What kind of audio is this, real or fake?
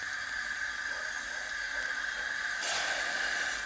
real